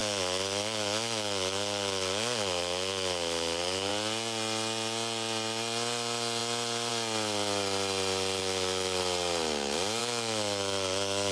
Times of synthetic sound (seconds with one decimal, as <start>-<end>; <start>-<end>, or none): 0.0-3.9; 8.4-9.0; 10.0-11.3